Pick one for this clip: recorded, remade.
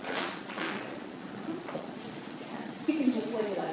remade